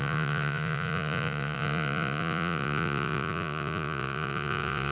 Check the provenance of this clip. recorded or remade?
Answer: remade